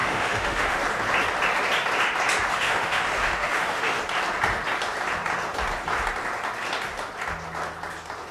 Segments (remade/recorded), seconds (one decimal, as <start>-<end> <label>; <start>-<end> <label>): 0.0-0.8 remade; 0.8-2.5 recorded; 2.5-4.0 remade; 4.0-8.3 recorded